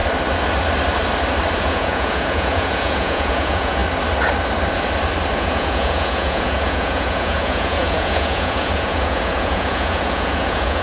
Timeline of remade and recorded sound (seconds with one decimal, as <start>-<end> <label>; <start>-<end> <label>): 0.0-1.6 recorded; 1.6-3.8 remade; 3.8-5.4 recorded; 5.4-10.8 remade